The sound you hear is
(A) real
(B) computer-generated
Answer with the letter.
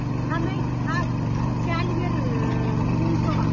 A